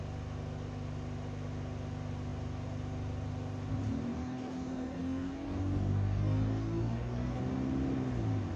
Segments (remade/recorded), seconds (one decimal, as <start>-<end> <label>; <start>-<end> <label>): 0.0-4.1 recorded; 4.1-7.4 remade; 7.4-8.6 recorded